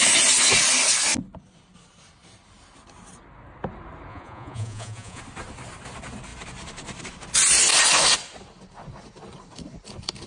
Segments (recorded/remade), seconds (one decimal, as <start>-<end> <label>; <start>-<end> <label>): 0.0-4.1 recorded; 4.1-5.2 remade; 5.2-10.3 recorded

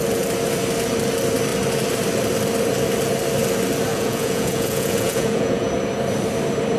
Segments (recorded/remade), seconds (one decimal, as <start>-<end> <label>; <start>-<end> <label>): 0.0-3.9 recorded; 3.9-5.7 remade; 5.7-6.8 recorded

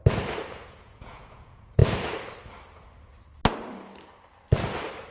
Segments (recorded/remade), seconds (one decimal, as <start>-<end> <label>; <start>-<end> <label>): 0.0-0.5 recorded; 0.5-1.8 remade; 1.8-5.1 recorded